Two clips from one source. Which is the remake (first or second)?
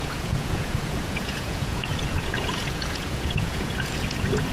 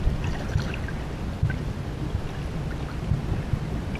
first